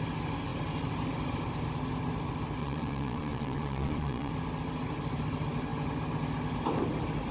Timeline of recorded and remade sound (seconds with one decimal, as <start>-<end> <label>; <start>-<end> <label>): 0.0-2.6 recorded; 2.6-4.3 remade; 4.3-7.3 recorded